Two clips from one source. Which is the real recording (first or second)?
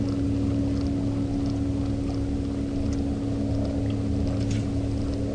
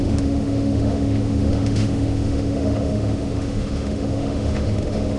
first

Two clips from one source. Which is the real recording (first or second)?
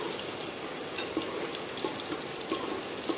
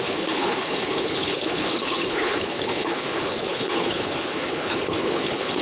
first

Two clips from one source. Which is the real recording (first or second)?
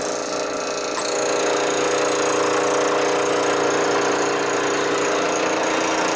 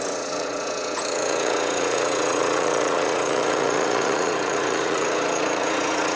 first